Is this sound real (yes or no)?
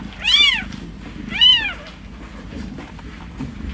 yes